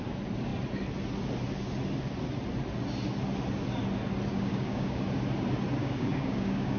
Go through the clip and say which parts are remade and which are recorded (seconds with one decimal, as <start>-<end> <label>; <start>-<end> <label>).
0.0-4.3 recorded; 4.3-5.0 remade; 5.0-5.8 recorded; 5.8-6.8 remade